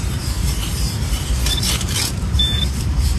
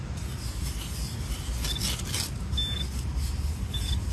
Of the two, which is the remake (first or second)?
first